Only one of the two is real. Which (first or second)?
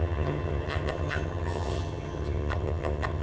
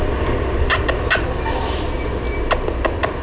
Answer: second